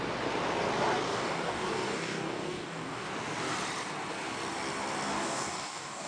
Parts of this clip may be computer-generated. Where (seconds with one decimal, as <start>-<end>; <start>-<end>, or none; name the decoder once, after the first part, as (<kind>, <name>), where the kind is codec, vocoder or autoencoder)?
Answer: 1.1-3.1 (codec, DAC); 5.1-6.1